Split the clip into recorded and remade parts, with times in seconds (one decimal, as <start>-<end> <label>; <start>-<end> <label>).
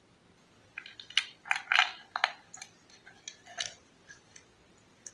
0.0-5.1 recorded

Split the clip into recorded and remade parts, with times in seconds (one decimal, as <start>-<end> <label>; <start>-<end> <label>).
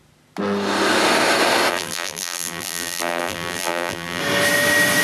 0.0-1.7 recorded; 1.7-4.2 remade; 4.2-5.0 recorded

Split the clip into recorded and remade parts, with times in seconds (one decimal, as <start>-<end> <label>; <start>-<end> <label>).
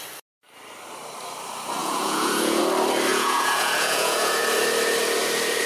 0.0-1.8 recorded; 1.8-2.6 remade; 2.6-3.1 recorded; 3.1-4.4 remade; 4.4-5.7 recorded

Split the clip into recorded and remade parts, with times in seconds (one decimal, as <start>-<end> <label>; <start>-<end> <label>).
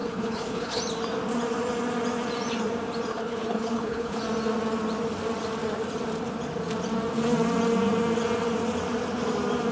0.0-0.8 remade; 0.8-3.1 recorded; 3.1-4.2 remade; 4.2-9.7 recorded